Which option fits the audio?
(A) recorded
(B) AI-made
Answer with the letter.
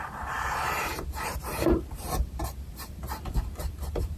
B